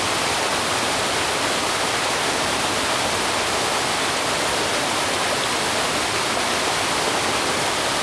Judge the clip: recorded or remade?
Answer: recorded